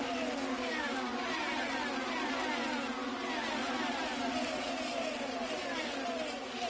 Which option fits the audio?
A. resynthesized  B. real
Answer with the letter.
B